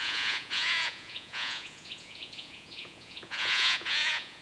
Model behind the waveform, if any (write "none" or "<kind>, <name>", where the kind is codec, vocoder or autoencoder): vocoder, Vocos